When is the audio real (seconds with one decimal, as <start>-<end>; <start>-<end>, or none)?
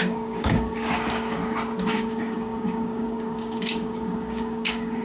1.4-1.9